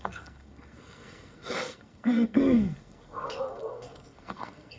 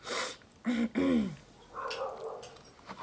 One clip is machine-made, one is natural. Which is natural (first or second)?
second